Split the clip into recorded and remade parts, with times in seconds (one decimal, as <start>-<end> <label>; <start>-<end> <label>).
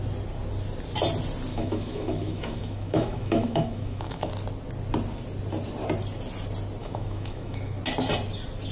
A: 0.0-1.5 recorded; 1.5-4.3 remade; 4.3-6.8 recorded; 6.8-7.8 remade; 7.8-8.7 recorded